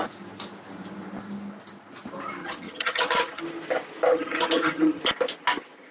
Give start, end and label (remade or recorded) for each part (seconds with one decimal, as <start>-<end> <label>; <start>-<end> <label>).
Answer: 0.0-2.4 recorded; 2.4-3.4 remade; 3.4-4.1 recorded; 4.1-5.0 remade; 5.0-5.9 recorded